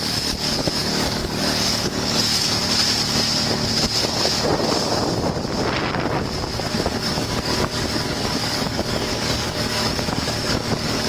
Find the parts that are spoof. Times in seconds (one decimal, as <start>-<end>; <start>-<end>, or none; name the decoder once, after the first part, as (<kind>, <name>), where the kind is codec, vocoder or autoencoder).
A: 0.0-2.6 (codec, DAC); 6.6-11.1